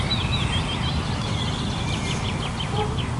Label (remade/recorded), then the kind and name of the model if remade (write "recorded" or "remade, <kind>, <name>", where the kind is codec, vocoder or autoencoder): recorded